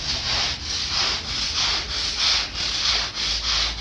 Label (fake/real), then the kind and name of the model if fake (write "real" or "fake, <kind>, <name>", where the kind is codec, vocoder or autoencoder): real